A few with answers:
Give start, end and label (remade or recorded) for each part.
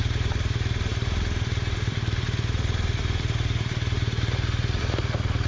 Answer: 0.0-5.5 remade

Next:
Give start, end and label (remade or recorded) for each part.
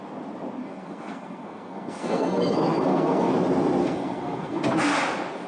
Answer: 0.0-0.6 recorded; 0.6-3.3 remade; 3.3-3.8 recorded; 3.8-4.6 remade; 4.6-5.5 recorded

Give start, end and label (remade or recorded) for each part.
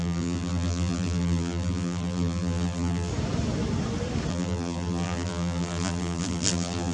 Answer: 0.0-3.1 remade; 3.1-4.3 recorded; 4.3-6.9 remade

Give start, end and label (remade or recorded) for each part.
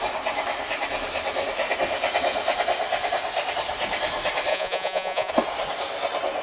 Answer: 0.0-4.5 recorded; 4.5-5.3 remade; 5.3-6.4 recorded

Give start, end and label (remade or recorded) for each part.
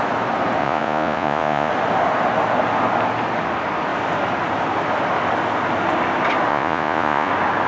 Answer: 0.0-0.6 recorded; 0.6-1.7 remade; 1.7-6.5 recorded; 6.5-7.3 remade; 7.3-7.7 recorded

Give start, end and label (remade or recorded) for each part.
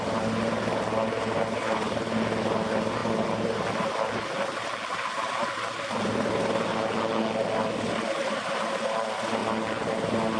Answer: 0.0-10.4 recorded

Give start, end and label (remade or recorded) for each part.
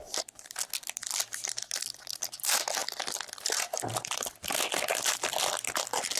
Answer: 0.0-2.8 recorded; 2.8-4.3 remade; 4.3-6.2 recorded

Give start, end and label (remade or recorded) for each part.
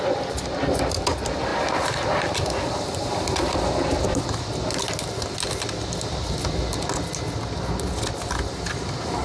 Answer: 0.0-9.2 recorded